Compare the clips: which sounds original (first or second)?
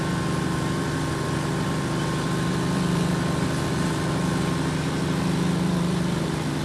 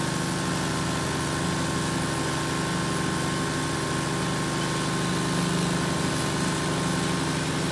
second